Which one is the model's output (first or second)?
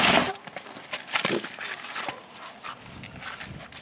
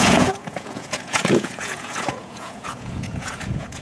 second